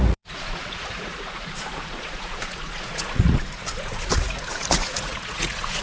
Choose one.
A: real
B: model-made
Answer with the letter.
B